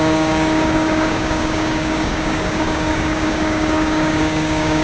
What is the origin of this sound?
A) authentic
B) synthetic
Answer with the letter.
B